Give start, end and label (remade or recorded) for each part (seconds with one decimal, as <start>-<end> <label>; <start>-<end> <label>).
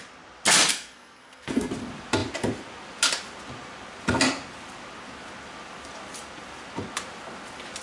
0.0-0.7 recorded; 0.7-1.7 remade; 1.7-7.8 recorded